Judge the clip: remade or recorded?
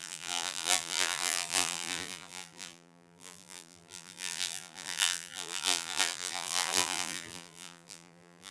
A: remade